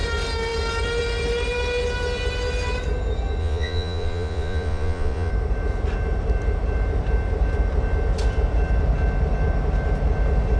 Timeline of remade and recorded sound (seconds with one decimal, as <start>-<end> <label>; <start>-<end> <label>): 0.0-3.4 recorded; 3.4-5.3 remade; 5.3-10.6 recorded